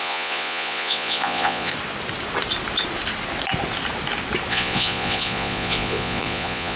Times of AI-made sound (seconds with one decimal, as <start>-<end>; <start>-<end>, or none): 0.0-1.7; 4.5-6.8